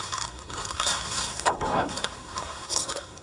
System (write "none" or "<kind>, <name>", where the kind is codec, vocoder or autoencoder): codec, SNAC